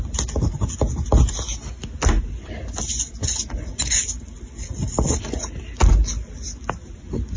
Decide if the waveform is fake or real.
real